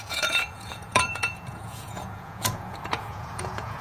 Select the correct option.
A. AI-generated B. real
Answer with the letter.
A